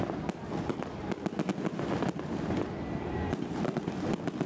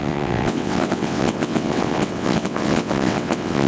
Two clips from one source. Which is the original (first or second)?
first